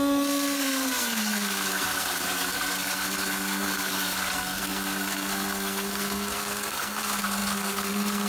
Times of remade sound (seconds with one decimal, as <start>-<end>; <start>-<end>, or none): 0.0-8.3